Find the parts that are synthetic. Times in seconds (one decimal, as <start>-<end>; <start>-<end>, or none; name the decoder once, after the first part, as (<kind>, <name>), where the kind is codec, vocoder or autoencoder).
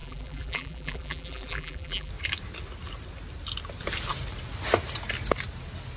0.0-2.1 (vocoder, BigVGAN v2)